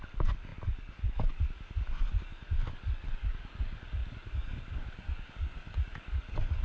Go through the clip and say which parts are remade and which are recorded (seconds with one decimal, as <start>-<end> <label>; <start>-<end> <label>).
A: 0.0-6.6 remade